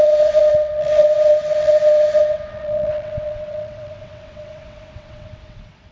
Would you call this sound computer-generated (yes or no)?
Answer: yes